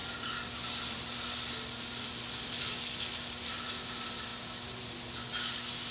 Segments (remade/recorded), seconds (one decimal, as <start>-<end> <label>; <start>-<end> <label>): 0.0-5.9 recorded